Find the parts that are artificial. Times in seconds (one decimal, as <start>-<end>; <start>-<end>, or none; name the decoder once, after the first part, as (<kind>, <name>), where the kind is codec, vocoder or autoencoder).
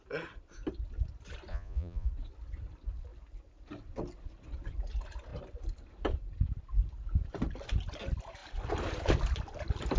1.5-2.1 (vocoder, Vocos)